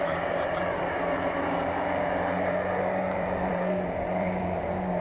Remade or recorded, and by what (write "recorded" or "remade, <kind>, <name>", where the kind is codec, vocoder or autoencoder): remade, vocoder, BigVGAN v2